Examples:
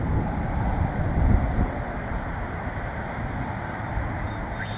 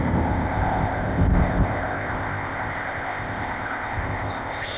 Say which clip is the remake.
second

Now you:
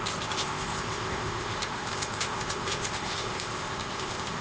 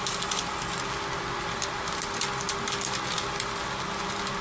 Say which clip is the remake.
first